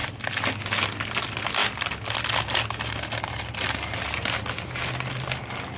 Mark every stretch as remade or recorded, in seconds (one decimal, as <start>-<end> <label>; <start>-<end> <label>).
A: 0.0-5.8 recorded

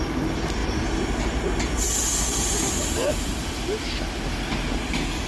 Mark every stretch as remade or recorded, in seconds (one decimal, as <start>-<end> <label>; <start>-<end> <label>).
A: 0.0-5.3 recorded

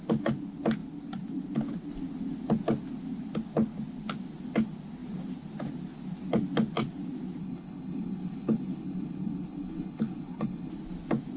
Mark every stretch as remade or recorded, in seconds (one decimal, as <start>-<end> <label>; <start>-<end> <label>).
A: 0.0-7.4 recorded; 7.4-10.7 remade; 10.7-11.4 recorded

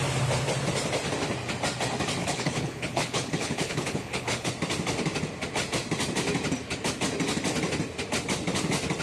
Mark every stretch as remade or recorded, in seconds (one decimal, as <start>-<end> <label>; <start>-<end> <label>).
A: 0.0-2.2 recorded; 2.2-4.5 remade; 4.5-9.0 recorded